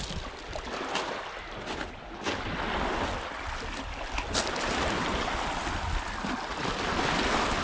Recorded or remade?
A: recorded